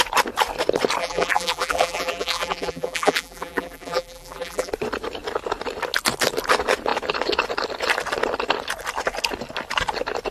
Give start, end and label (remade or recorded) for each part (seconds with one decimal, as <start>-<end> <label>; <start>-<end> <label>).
0.0-1.0 recorded; 1.0-4.7 remade; 4.7-10.3 recorded